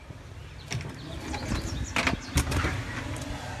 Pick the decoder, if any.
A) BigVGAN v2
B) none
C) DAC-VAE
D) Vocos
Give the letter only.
B